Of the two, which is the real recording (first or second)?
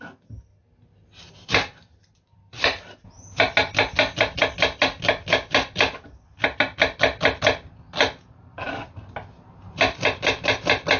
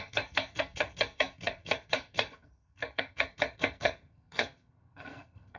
first